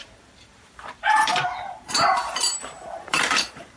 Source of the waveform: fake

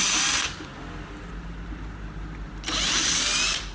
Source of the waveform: real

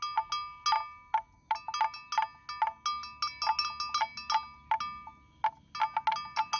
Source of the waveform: real